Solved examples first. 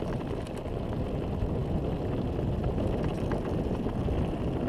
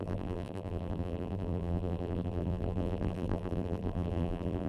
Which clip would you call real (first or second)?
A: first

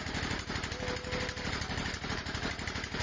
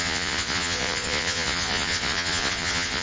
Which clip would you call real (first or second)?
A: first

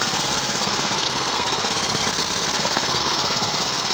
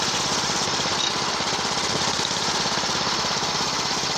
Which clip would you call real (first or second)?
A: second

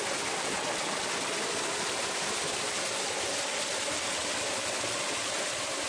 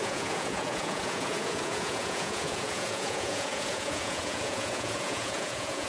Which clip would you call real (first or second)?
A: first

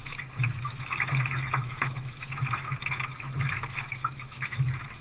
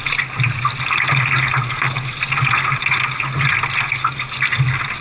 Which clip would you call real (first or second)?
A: second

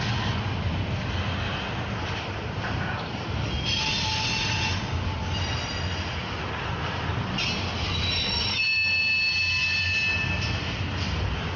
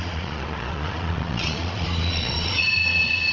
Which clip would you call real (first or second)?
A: first